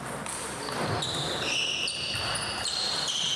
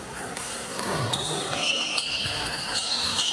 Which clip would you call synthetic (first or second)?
second